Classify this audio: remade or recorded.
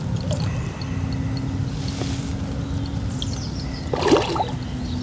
recorded